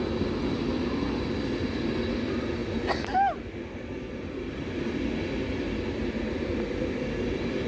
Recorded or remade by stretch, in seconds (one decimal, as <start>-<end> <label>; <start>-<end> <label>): 0.0-7.7 recorded